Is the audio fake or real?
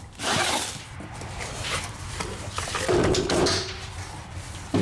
fake